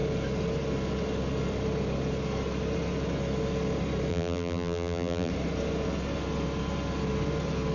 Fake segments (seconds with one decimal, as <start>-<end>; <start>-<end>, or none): 4.1-5.3